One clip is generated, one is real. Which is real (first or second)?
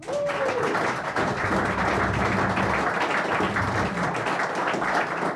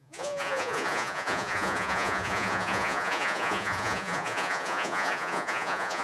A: first